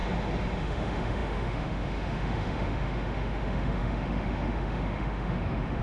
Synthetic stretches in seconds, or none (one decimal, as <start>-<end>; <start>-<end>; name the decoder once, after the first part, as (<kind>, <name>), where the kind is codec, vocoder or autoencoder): 0.6-5.8 (autoencoder, DAC-VAE)